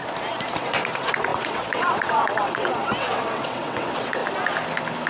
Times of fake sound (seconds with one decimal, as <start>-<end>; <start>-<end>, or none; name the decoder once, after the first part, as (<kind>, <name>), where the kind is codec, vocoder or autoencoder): 0.6-4.2 (vocoder, WaveNeXt)

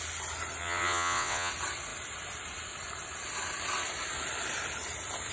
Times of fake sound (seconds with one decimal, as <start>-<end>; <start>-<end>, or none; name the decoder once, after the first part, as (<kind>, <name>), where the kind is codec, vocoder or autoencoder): 0.6-1.5 (vocoder, WaveNeXt)